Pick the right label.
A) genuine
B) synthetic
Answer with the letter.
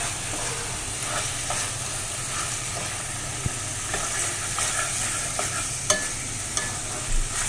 A